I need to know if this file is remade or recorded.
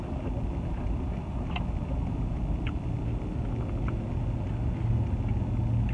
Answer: recorded